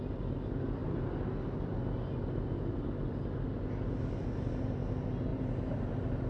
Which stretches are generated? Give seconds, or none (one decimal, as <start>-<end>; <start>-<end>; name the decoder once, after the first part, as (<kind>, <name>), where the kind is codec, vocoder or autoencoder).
none